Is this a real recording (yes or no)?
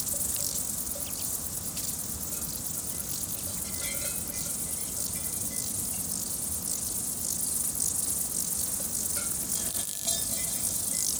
yes